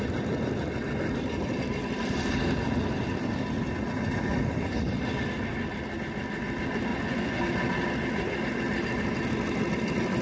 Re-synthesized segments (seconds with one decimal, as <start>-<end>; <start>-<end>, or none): 6.9-7.4